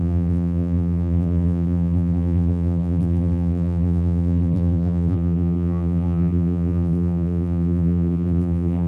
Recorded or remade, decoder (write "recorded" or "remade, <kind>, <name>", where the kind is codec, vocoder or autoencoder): remade, vocoder, BigVGAN v2